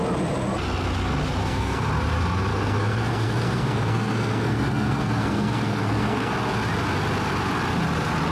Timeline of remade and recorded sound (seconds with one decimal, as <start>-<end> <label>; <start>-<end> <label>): 0.0-1.4 recorded; 1.4-1.9 remade; 1.9-2.5 recorded; 2.5-6.3 remade; 6.3-8.3 recorded